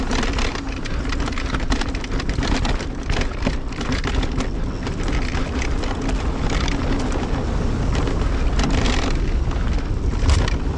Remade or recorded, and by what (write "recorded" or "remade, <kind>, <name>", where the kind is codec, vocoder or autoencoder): recorded